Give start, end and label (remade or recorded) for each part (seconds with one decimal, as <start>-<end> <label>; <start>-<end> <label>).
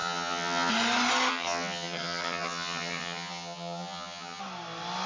0.0-0.7 remade; 0.7-1.3 recorded; 1.3-4.4 remade; 4.4-5.1 recorded